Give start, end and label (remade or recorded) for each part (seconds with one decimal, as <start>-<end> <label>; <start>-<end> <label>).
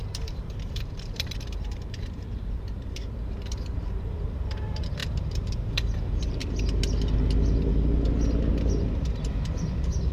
0.0-6.4 remade; 6.4-9.3 recorded; 9.3-10.1 remade